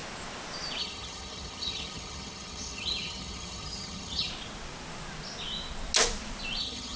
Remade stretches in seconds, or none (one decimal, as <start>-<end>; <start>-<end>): 0.8-4.3; 6.6-7.0